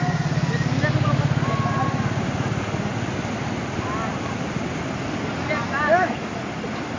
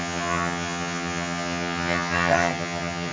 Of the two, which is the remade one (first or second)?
second